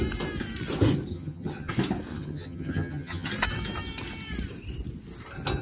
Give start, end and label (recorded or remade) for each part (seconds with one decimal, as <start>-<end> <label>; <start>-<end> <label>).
0.0-1.1 recorded; 1.1-1.7 remade; 1.7-2.1 recorded; 2.1-3.3 remade; 3.3-5.6 recorded